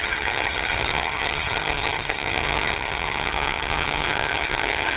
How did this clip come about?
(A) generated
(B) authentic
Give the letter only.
A